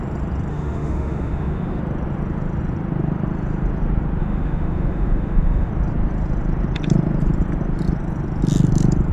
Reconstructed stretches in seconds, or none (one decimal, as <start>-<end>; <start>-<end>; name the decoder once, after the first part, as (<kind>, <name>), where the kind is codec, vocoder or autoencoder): 0.5-1.8 (autoencoder, DAC-VAE); 4.2-5.7